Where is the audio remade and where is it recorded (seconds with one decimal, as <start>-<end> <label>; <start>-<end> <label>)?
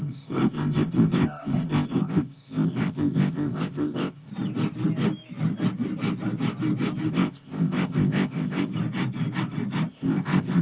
0.0-4.3 remade; 4.3-7.1 recorded; 7.1-8.7 remade; 8.7-9.9 recorded; 9.9-10.6 remade